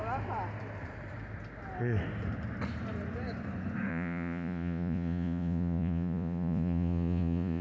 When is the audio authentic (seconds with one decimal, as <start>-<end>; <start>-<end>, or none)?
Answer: 0.0-3.9